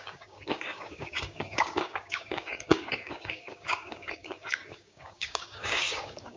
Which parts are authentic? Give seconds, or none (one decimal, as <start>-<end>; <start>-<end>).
none